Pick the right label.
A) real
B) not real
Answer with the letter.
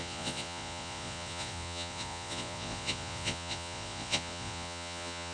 B